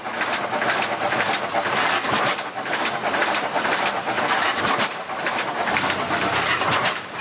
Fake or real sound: real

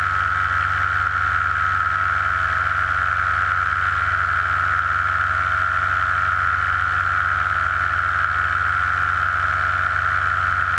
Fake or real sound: real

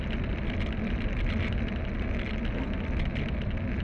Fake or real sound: real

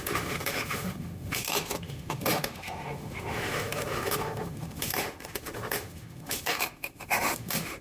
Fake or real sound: fake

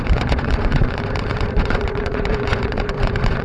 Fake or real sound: fake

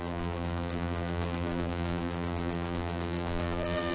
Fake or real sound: fake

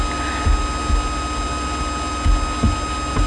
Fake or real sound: real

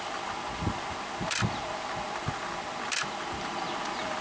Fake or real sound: real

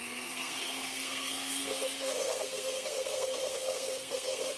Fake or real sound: fake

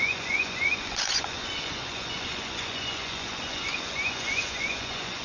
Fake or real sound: fake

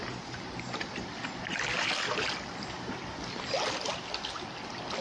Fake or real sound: real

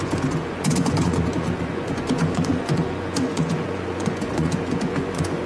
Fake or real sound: fake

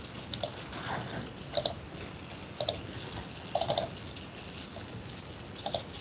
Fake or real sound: real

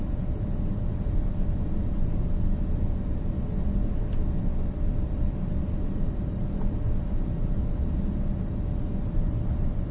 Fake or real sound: real